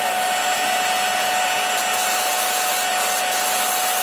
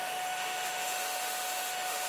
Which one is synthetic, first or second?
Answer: second